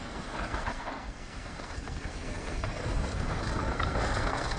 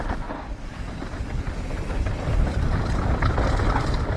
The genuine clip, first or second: second